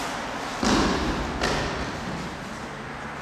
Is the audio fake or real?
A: real